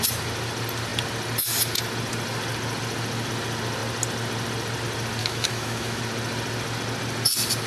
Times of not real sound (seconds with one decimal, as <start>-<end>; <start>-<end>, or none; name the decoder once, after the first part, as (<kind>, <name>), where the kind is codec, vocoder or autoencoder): 5.2-6.0 (autoencoder, DAC-VAE)